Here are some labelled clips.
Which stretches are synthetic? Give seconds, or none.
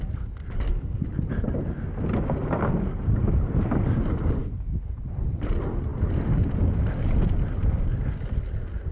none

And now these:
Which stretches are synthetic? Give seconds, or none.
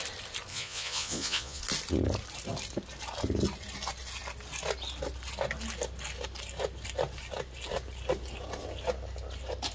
0.5-1.6 (vocoder, Vocos)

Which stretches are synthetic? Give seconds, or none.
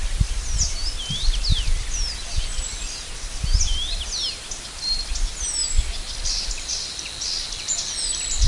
none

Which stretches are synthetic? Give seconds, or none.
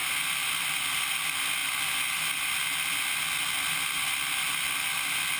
none